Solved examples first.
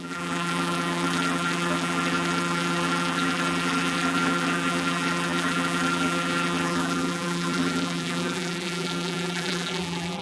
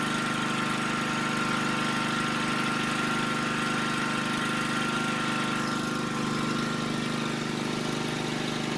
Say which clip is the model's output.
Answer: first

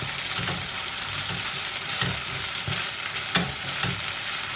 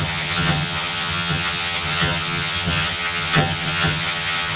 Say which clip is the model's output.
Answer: second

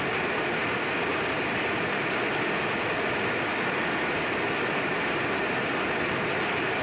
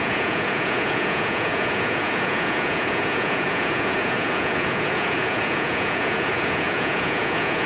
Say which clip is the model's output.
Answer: second